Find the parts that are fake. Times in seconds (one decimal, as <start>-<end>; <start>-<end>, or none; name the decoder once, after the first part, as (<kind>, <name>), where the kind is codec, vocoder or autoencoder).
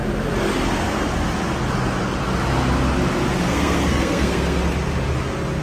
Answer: 3.4-4.6 (codec, SNAC)